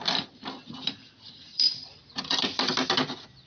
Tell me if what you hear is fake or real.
fake